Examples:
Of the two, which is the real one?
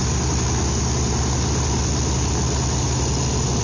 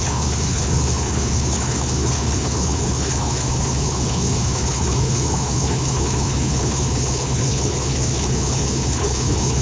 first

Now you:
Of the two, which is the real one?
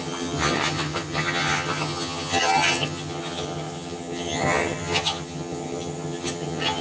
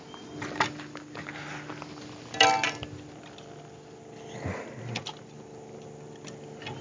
second